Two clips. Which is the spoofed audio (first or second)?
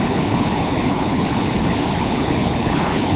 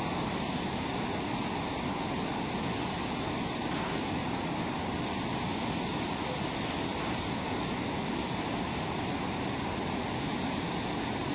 first